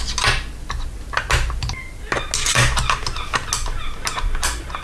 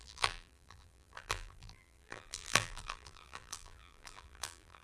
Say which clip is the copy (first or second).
second